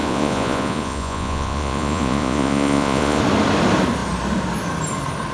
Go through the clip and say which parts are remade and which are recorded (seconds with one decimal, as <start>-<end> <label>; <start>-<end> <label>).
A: 0.0-3.2 remade; 3.2-5.3 recorded